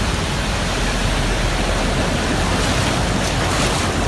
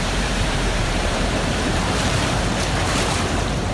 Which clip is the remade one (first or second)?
second